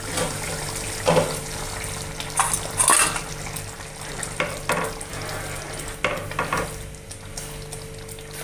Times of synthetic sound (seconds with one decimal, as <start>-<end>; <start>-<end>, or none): none